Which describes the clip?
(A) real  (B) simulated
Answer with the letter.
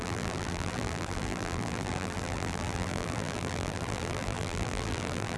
B